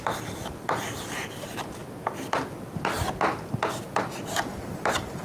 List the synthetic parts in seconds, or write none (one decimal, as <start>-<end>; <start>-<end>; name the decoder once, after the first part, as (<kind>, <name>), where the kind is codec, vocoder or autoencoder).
0.0-1.8 (vocoder, BigVGAN v2); 4.7-5.2